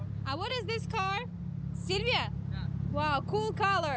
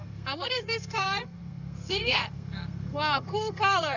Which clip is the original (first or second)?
first